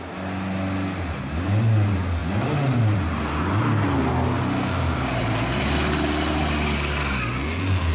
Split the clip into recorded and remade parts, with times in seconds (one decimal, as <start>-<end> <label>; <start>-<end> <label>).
0.0-7.9 recorded